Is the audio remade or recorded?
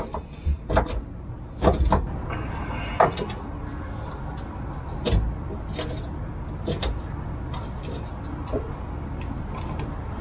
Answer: recorded